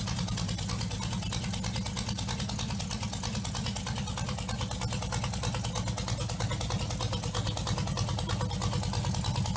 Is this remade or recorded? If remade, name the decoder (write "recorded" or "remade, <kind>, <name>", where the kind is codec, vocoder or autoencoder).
recorded